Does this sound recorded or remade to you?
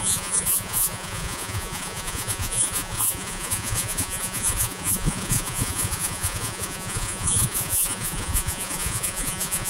remade